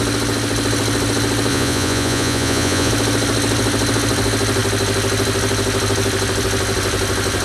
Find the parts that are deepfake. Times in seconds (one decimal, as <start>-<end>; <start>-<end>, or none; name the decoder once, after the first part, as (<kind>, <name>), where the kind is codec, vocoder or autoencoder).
1.5-2.9 (vocoder, Vocos)